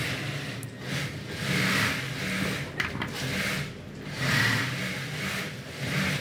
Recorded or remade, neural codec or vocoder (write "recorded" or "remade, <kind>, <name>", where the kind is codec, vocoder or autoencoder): recorded